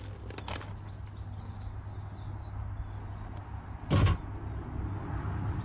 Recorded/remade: recorded